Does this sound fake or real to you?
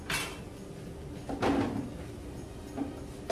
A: real